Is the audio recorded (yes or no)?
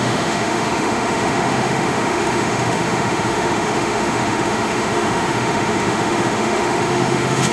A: no